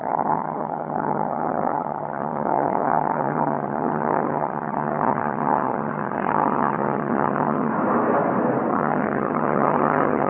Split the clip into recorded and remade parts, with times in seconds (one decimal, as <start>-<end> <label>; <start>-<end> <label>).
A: 0.0-7.7 remade; 7.7-8.7 recorded; 8.7-10.3 remade